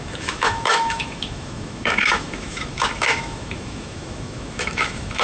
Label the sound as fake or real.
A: fake